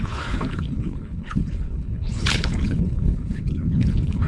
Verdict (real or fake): fake